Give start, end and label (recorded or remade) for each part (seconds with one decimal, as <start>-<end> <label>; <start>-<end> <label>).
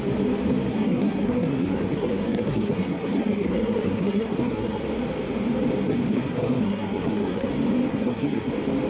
0.0-0.7 recorded; 0.7-4.8 remade; 4.8-5.9 recorded; 5.9-7.5 remade; 7.5-7.9 recorded; 7.9-8.5 remade; 8.5-8.9 recorded